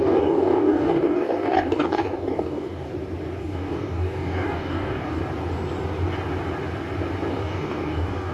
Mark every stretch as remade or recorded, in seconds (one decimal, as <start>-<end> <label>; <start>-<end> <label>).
0.0-2.9 remade; 2.9-3.4 recorded; 3.4-5.2 remade; 5.2-7.3 recorded; 7.3-8.3 remade